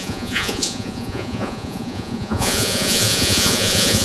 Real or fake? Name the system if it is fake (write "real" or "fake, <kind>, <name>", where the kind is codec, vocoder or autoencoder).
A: fake, vocoder, Vocos